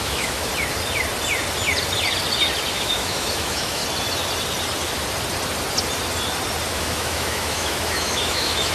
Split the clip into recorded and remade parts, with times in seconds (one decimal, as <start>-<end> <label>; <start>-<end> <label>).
0.0-0.5 remade; 0.5-2.7 recorded; 2.7-3.8 remade; 3.8-6.7 recorded; 6.7-8.7 remade